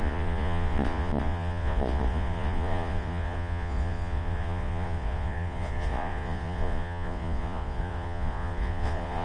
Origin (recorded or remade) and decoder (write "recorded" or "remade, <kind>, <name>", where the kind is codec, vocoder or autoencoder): remade, vocoder, Vocos